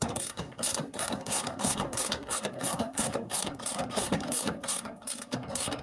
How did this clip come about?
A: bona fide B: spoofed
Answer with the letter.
B